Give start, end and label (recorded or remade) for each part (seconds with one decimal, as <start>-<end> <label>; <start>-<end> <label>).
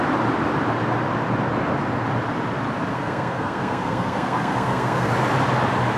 0.0-2.9 recorded; 2.9-5.1 remade; 5.1-6.0 recorded